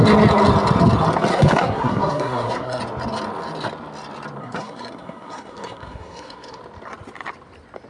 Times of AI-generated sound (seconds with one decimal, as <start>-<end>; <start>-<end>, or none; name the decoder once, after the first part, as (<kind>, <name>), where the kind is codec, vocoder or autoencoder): 1.3-2.8 (codec, SNAC); 4.4-6.6